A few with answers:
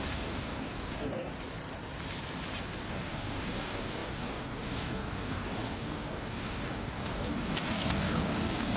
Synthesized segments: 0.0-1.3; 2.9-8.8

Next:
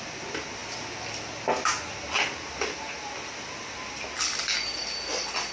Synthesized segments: none

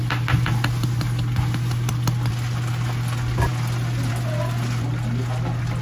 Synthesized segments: none

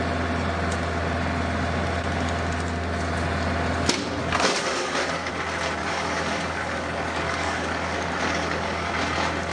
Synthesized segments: 4.2-5.3; 5.8-8.9